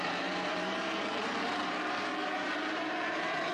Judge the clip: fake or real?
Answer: fake